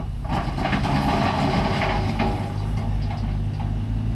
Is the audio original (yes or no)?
yes